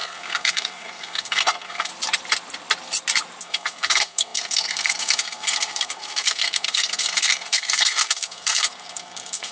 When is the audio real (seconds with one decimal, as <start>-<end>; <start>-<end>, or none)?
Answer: 1.9-3.4

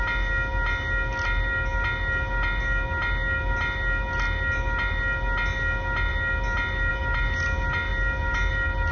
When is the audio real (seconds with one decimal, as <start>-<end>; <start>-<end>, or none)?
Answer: 0.0-8.9